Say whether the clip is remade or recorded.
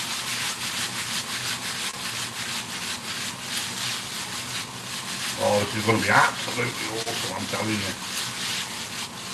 recorded